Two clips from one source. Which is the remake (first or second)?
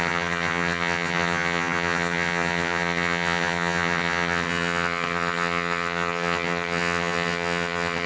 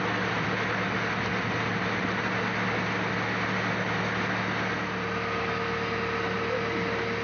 first